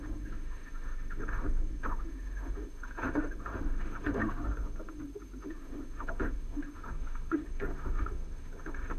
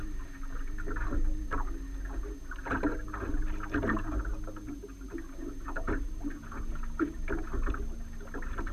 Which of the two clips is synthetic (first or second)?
first